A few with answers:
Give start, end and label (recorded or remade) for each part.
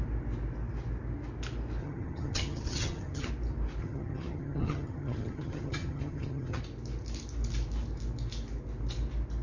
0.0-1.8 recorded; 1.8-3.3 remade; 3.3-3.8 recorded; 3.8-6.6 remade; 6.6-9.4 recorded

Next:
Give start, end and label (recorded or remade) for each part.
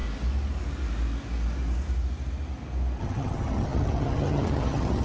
0.0-3.0 recorded; 3.0-5.0 remade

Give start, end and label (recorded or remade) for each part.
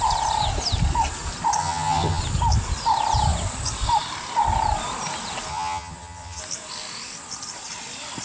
0.0-1.6 recorded; 1.6-2.2 remade; 2.2-5.5 recorded; 5.5-6.4 remade; 6.4-8.2 recorded